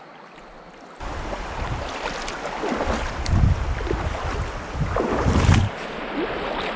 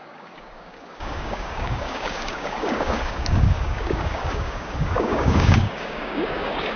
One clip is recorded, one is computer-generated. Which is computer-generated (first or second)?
second